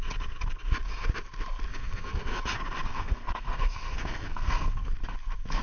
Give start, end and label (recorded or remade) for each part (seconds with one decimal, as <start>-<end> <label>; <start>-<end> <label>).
0.0-1.7 recorded; 1.7-2.2 remade; 2.2-2.9 recorded; 2.9-4.9 remade; 4.9-5.6 recorded